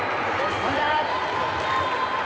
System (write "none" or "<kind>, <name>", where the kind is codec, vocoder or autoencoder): none